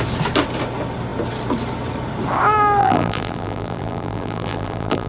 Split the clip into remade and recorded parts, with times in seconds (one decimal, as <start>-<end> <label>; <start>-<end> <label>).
0.0-2.8 recorded; 2.8-5.1 remade